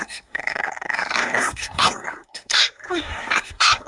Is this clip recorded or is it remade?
remade